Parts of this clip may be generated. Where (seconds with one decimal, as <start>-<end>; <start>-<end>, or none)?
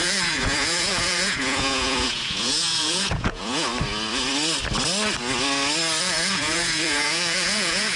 0.0-3.7; 6.0-8.0